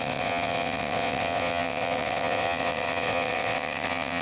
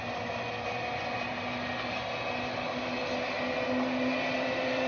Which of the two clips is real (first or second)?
second